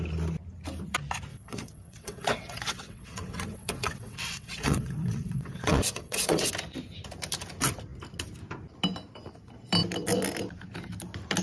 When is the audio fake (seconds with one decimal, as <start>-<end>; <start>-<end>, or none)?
1.3-6.5